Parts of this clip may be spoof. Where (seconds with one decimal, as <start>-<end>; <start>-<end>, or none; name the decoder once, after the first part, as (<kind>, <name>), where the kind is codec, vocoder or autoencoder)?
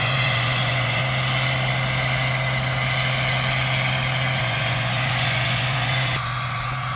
0.0-1.0 (vocoder, Vocos); 4.4-7.0